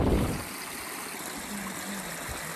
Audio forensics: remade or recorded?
recorded